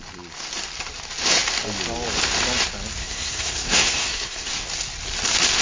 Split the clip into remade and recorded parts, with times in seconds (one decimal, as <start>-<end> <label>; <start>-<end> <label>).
0.0-3.0 recorded; 3.0-4.5 remade; 4.5-5.6 recorded